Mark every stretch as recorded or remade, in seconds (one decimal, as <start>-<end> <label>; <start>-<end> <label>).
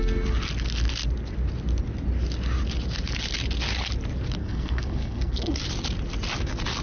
0.0-4.4 recorded; 4.4-5.6 remade; 5.6-6.8 recorded